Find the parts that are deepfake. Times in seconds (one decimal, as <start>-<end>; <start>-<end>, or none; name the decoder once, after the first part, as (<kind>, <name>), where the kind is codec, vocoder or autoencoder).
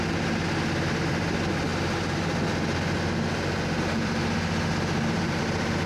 none